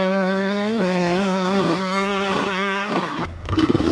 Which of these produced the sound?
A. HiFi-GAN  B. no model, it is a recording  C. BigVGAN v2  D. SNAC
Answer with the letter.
D